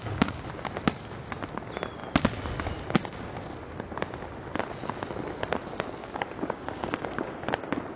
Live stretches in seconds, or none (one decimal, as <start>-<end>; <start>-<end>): 0.5-6.0; 7.4-8.0